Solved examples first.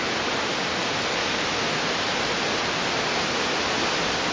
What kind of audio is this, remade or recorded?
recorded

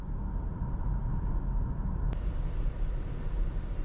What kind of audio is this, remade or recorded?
recorded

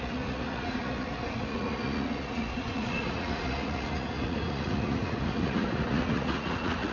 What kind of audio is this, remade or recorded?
remade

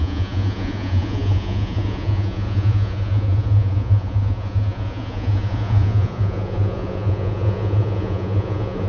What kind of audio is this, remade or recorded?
remade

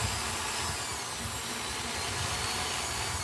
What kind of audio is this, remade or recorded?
recorded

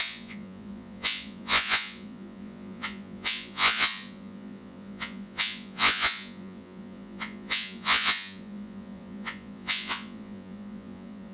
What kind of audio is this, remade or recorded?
remade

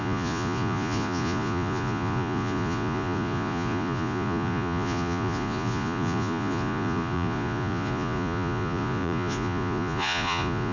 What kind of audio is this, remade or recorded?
remade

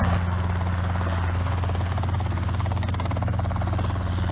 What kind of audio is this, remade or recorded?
recorded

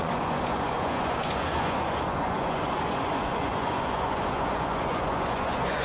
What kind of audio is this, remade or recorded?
remade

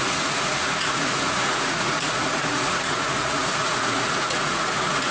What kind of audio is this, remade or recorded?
remade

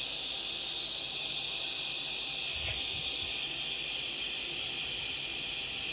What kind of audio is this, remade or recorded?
recorded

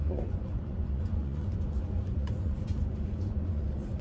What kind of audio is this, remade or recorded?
remade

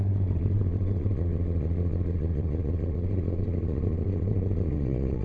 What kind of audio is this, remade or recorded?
remade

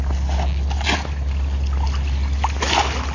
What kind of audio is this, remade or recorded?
recorded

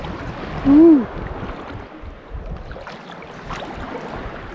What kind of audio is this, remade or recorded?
recorded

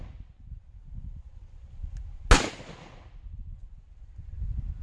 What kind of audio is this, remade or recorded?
recorded